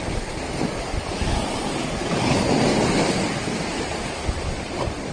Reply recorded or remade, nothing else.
recorded